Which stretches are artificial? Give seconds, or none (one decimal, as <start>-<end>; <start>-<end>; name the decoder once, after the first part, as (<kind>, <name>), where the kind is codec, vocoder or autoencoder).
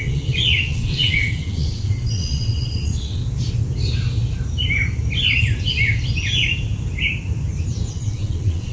0.0-3.2 (vocoder, WaveNeXt); 7.9-8.7